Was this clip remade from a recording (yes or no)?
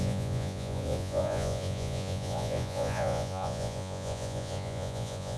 yes